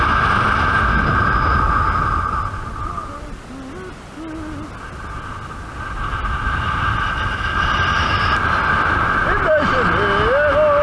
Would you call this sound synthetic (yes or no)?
no